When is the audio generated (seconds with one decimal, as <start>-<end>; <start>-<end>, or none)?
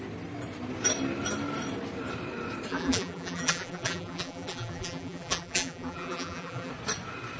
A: 2.7-6.7